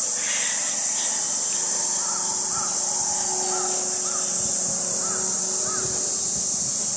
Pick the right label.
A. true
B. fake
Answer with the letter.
A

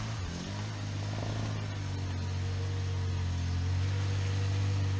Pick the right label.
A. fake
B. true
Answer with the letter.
B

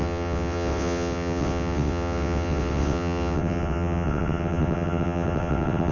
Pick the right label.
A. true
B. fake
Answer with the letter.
B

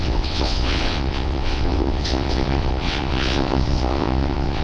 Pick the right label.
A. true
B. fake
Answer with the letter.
B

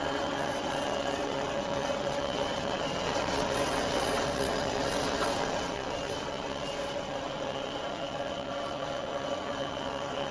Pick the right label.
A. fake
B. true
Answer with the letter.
A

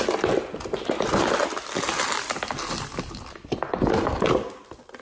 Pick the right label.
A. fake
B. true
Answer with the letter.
B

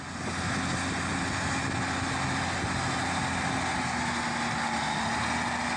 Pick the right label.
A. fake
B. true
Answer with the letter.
B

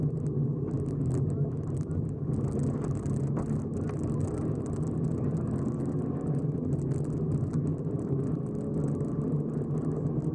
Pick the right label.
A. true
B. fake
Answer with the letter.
A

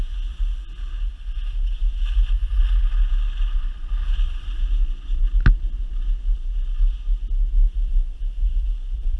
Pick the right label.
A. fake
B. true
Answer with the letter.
B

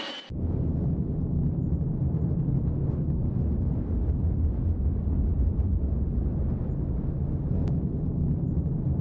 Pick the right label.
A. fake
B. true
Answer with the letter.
B